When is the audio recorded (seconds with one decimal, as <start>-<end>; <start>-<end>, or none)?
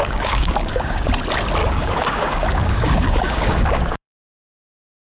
1.1-1.6; 4.6-5.0